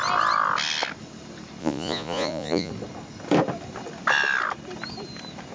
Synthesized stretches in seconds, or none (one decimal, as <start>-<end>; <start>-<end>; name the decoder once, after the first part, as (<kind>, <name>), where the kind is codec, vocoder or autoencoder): 1.6-2.7 (vocoder, Vocos)